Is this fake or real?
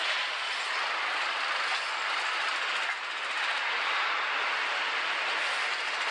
real